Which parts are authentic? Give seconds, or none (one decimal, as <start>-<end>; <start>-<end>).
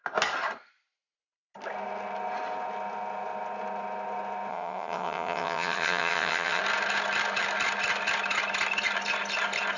0.0-4.5; 6.6-9.8